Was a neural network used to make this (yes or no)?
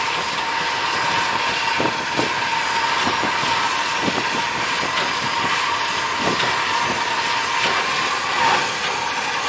no